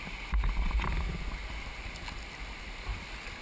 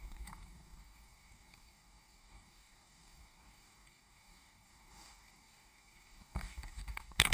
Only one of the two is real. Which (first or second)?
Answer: first